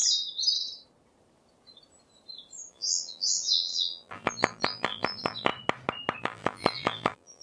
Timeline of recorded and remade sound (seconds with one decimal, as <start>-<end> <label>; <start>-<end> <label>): 0.0-2.7 recorded; 2.7-5.5 remade; 5.5-6.2 recorded; 6.2-7.4 remade